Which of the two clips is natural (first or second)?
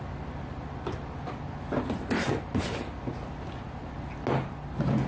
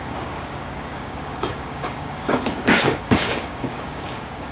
first